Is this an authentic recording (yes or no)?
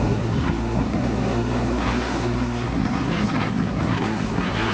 no